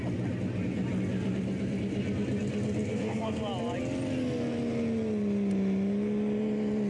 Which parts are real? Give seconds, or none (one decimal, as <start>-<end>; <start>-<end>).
0.0-2.9; 3.4-6.9